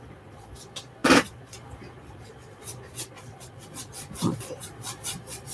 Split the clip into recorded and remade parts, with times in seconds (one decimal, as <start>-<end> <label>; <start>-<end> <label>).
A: 0.0-5.5 remade